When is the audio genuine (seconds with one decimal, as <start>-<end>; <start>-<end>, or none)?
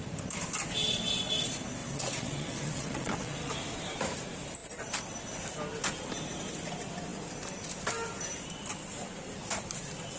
0.0-1.8; 3.5-10.2